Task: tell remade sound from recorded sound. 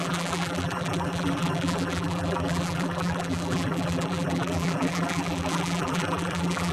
remade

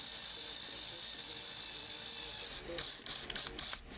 recorded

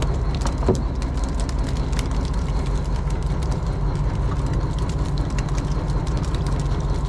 recorded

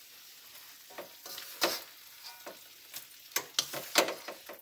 recorded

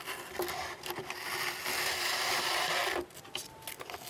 recorded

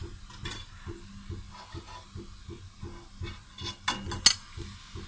recorded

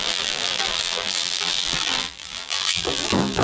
remade